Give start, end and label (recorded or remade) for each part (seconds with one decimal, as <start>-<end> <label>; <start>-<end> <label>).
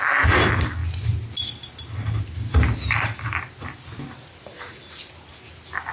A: 0.0-5.9 recorded